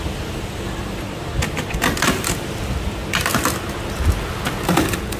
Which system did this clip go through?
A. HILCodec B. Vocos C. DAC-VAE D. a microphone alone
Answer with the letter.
D